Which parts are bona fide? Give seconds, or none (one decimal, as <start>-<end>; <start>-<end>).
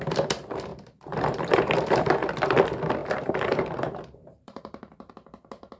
0.0-0.7; 2.1-3.0; 5.1-5.8